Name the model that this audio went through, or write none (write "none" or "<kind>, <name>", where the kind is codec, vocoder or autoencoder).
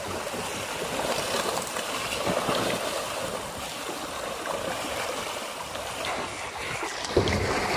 none